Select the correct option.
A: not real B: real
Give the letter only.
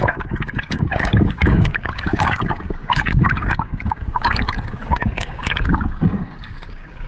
A